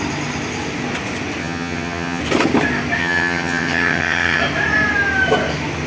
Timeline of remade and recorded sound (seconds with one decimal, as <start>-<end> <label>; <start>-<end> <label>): 0.0-1.4 recorded; 1.4-2.2 remade; 2.2-3.0 recorded; 3.0-4.4 remade; 4.4-5.9 recorded